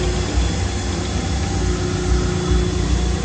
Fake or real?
real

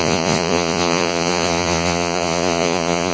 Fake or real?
fake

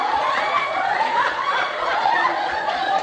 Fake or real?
fake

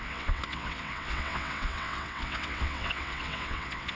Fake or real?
fake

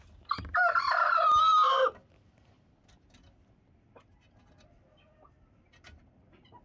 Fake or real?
real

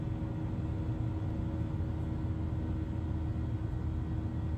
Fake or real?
real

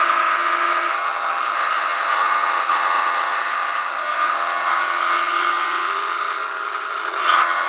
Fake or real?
fake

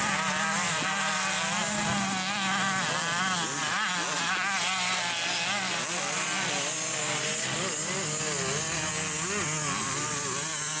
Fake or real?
real